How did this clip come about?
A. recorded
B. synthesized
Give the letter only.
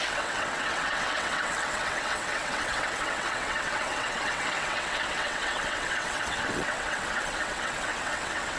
B